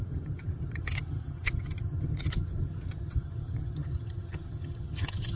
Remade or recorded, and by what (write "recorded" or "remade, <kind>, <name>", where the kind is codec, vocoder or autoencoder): remade, vocoder, HiFi-GAN